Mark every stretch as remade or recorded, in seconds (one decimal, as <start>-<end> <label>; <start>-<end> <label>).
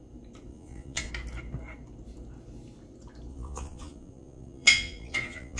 0.0-0.5 recorded; 0.5-1.1 remade; 1.1-3.3 recorded; 3.3-5.6 remade